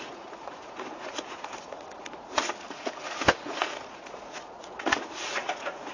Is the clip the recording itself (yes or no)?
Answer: no